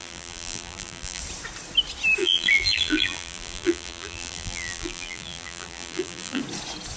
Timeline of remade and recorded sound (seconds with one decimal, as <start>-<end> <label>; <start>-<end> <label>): 0.0-1.2 remade; 1.2-2.2 recorded; 2.2-6.4 remade; 6.4-7.0 recorded